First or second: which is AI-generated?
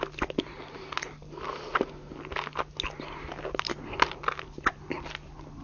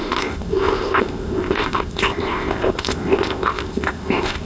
second